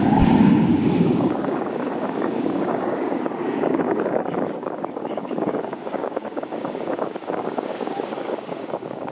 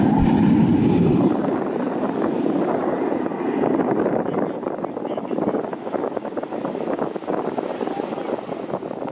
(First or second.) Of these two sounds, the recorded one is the second